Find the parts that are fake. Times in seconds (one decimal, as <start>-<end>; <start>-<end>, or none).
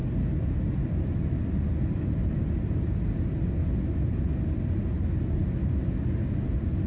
none